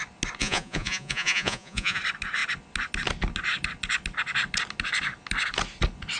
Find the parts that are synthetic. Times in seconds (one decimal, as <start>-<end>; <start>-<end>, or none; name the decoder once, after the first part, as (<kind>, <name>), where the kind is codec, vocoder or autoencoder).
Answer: 0.4-2.0 (vocoder, Vocos)